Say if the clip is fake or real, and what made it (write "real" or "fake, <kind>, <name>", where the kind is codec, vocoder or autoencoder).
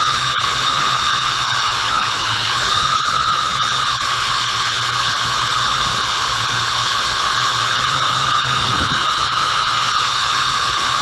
fake, codec, HILCodec